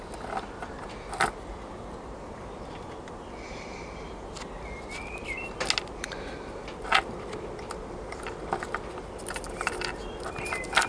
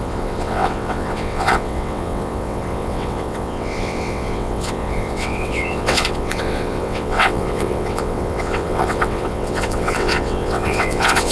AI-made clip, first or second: second